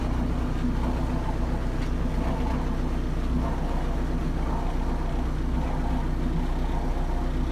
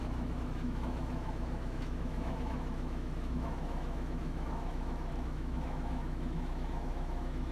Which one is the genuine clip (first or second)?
first